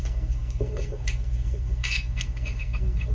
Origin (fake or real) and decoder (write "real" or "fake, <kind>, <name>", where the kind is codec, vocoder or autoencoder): fake, codec, SNAC